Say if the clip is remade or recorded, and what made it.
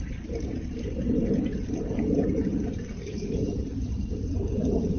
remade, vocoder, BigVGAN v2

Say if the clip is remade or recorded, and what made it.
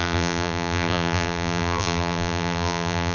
remade, vocoder, BigVGAN v2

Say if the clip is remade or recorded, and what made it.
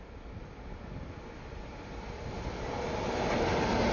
recorded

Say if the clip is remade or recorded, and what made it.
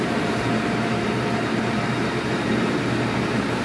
remade, vocoder, BigVGAN v2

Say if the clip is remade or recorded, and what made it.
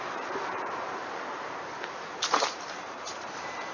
remade, vocoder, BigVGAN v2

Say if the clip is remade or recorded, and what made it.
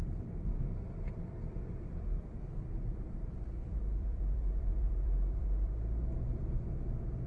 remade, vocoder, BigVGAN v2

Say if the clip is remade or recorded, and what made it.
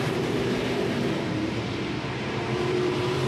remade, vocoder, BigVGAN v2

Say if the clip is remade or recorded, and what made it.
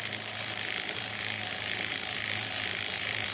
remade, vocoder, BigVGAN v2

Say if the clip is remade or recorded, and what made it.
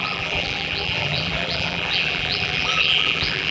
remade, vocoder, BigVGAN v2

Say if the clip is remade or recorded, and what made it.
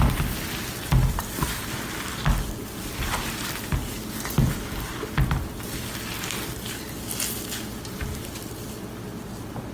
recorded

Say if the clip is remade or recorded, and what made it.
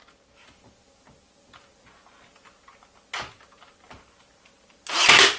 recorded